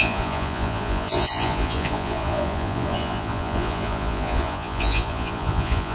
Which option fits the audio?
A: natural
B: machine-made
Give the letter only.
B